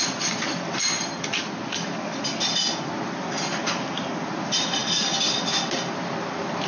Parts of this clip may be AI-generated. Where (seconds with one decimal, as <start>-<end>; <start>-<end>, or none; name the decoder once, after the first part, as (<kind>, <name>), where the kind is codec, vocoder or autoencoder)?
none